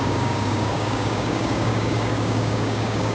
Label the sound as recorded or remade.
remade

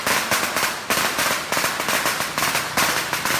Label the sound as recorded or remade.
recorded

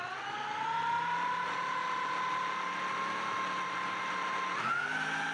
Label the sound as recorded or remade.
recorded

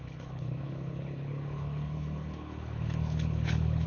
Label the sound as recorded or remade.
remade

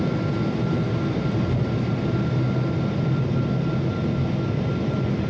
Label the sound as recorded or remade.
recorded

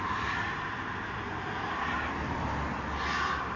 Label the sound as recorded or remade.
recorded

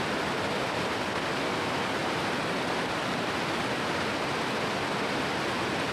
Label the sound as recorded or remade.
recorded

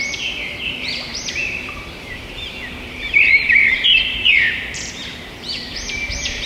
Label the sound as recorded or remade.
remade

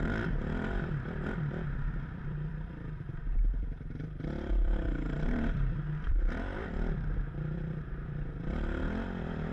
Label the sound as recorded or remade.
remade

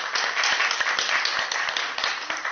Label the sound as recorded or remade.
recorded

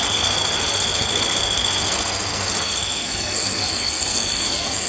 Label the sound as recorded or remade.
remade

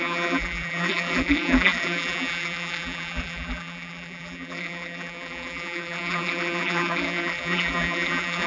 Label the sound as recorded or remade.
remade